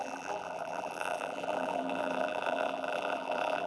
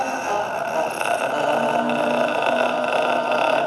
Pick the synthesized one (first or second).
first